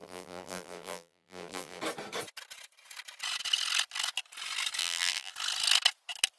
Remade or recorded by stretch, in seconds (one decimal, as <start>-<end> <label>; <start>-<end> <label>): 0.0-1.8 remade; 1.8-4.8 recorded; 4.8-5.3 remade; 5.3-6.4 recorded